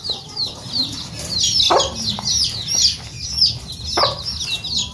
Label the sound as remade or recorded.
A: recorded